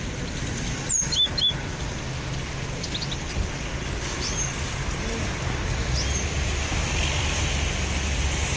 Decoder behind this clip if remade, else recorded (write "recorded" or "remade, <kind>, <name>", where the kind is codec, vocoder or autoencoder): recorded